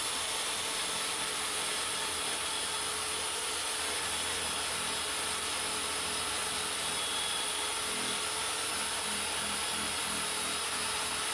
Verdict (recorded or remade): recorded